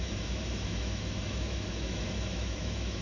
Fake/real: fake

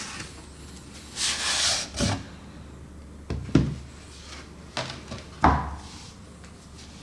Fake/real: real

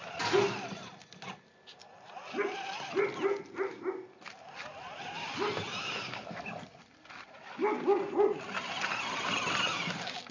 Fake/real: real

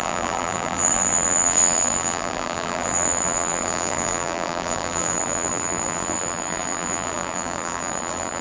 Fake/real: fake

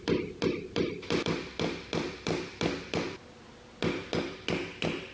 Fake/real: real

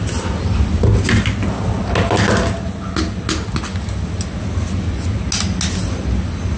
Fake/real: real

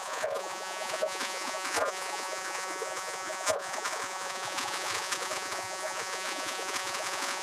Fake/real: fake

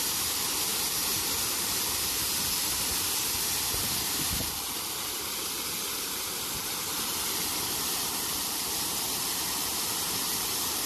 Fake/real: fake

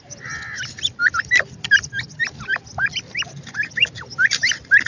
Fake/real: real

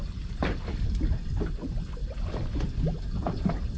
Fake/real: real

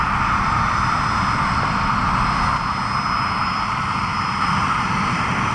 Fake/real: real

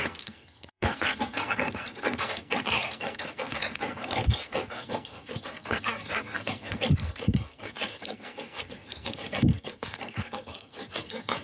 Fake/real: fake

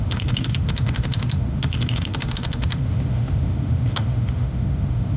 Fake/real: fake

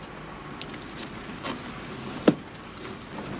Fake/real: real